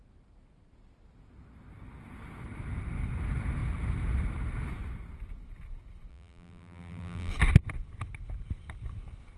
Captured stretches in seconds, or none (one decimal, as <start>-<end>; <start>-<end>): 0.0-6.1; 7.3-9.4